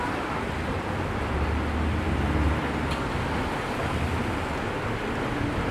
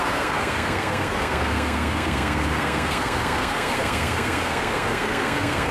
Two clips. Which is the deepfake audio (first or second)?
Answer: second